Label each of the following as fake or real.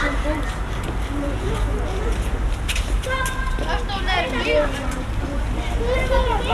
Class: real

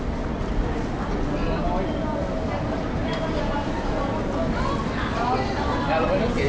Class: real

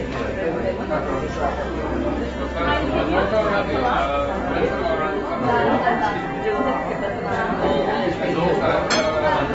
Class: real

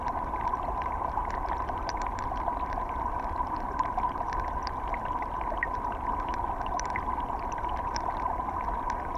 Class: fake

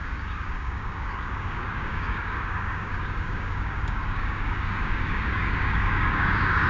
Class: fake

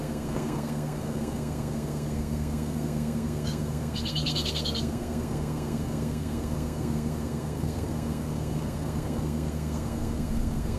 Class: fake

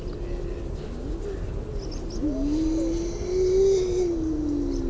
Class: real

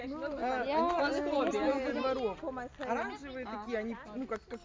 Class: real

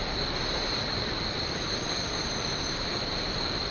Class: real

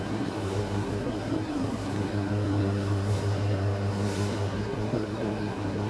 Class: fake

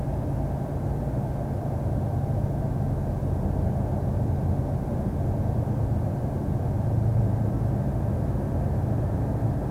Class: real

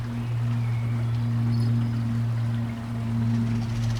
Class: real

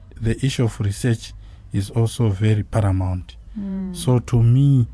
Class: fake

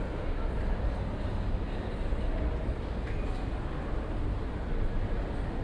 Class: real